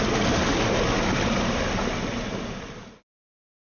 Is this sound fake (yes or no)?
no